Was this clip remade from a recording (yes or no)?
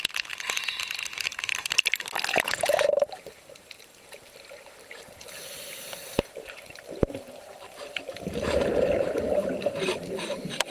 yes